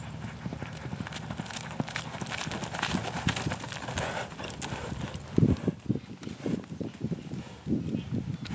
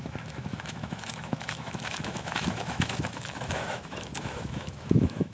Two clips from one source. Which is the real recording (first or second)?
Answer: first